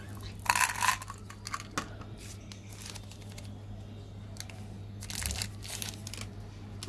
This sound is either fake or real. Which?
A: real